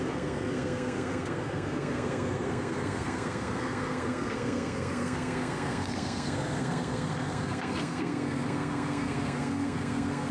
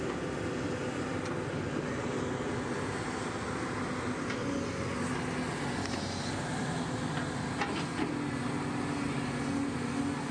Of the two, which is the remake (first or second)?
first